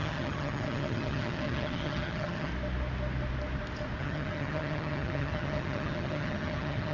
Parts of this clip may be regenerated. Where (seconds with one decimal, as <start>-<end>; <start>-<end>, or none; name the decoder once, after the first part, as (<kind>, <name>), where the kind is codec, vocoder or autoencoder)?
0.0-2.5 (vocoder, HiFi-GAN); 4.0-6.9